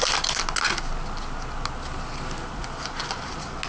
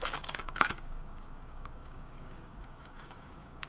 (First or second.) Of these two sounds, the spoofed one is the second